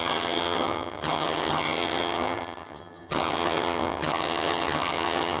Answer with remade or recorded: remade